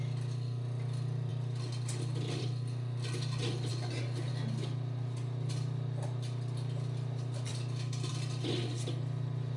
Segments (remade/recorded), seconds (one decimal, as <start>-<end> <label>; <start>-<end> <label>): 0.0-9.6 recorded